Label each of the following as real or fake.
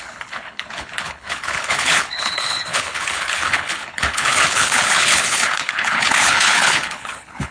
fake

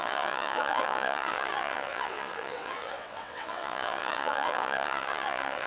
fake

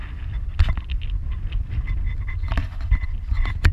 real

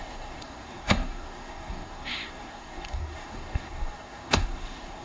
fake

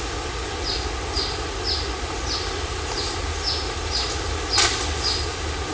real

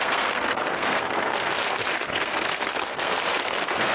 fake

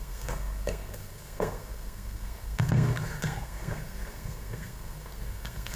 fake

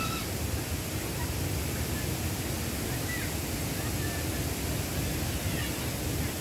real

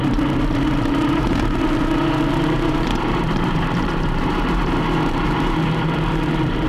fake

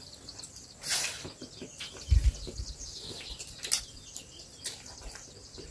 real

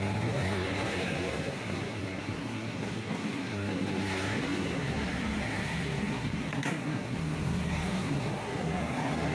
fake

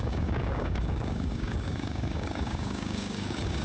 fake